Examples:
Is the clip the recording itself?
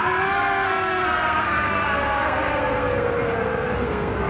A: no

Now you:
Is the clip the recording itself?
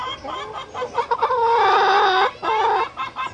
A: yes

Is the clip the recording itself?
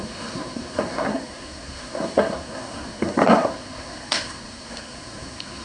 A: no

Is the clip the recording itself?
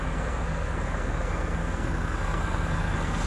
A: no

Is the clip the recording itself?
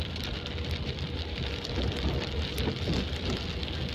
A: yes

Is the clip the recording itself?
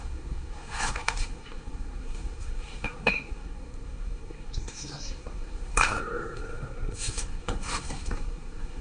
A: no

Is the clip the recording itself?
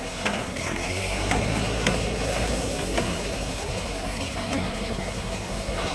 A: no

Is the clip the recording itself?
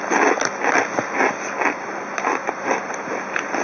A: yes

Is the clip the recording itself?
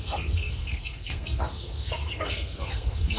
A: no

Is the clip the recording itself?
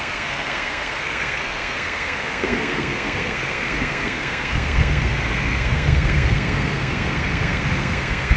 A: no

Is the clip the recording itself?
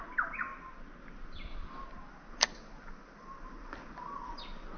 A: yes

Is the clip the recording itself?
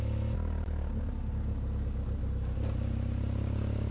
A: yes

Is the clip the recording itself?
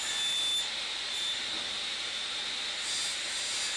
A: yes